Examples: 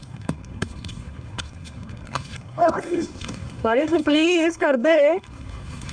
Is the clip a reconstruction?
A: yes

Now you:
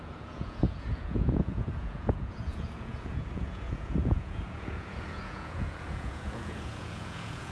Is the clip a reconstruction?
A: yes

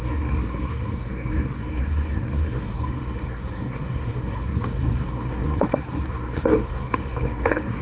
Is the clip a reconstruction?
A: yes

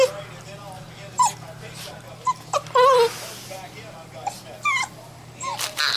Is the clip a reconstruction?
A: no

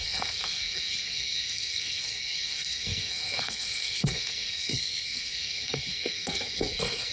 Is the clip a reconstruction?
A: yes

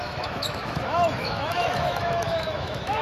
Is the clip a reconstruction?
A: yes